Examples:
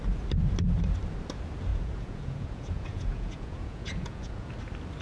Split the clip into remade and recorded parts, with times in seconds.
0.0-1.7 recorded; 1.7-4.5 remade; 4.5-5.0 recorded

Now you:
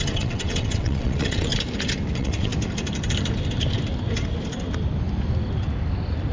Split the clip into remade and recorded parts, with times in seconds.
0.0-1.5 remade; 1.5-2.1 recorded; 2.1-2.5 remade; 2.5-6.3 recorded